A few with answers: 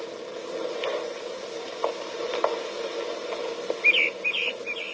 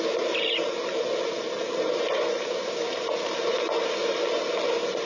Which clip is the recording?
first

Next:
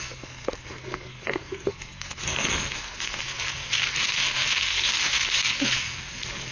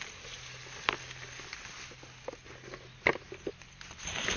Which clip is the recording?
second